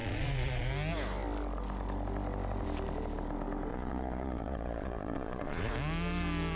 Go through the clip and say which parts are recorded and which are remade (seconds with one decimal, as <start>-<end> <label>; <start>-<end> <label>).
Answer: 0.0-0.7 remade; 0.7-3.7 recorded; 3.7-5.7 remade; 5.7-6.6 recorded